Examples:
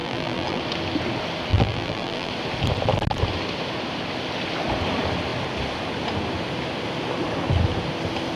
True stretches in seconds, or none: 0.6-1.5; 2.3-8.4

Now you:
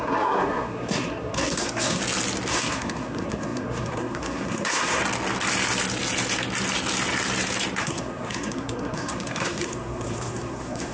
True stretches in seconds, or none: 2.0-2.5; 5.0-7.8

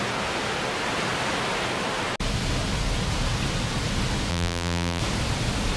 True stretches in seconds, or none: 0.0-4.3; 5.0-5.8

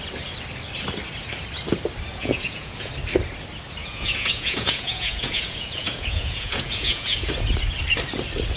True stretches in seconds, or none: 0.0-2.1; 2.9-3.8; 7.3-8.6

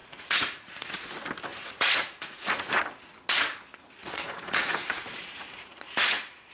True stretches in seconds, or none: 1.1-1.5; 2.8-4.0

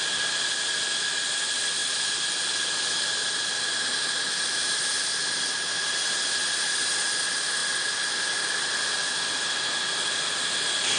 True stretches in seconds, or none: 0.0-11.0